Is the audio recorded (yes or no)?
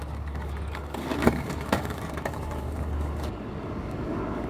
no